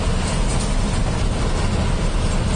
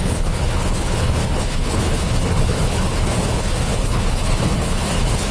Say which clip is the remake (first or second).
second